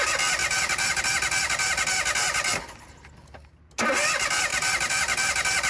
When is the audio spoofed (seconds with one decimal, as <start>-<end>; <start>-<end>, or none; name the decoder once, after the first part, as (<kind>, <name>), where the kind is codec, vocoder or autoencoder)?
0.4-1.0 (vocoder, BigVGAN v2); 4.5-5.7

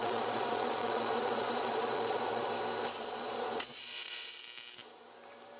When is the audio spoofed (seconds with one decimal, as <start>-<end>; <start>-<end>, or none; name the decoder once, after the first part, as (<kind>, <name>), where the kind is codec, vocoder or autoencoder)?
0.0-2.5 (vocoder, Vocos); 3.0-4.4

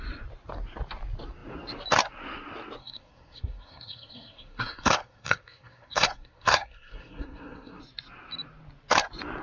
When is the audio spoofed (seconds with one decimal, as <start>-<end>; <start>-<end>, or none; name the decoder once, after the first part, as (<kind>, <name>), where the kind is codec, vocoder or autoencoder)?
2.8-7.8 (codec, SNAC)